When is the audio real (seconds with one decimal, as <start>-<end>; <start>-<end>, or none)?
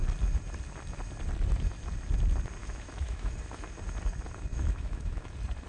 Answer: 0.0-2.6; 3.3-4.5; 5.3-5.7